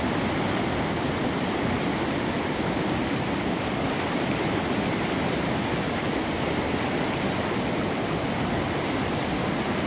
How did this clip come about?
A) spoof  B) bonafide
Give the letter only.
B